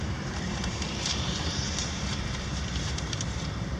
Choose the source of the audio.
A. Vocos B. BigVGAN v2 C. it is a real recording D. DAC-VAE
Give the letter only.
B